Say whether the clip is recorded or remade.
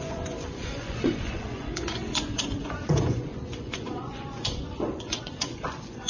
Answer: remade